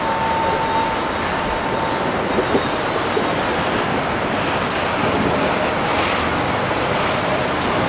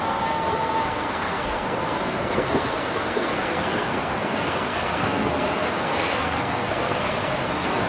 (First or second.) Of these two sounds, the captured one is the first